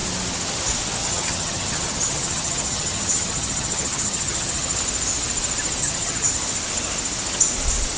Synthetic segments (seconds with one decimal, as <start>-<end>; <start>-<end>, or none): 1.0-4.8; 5.8-6.3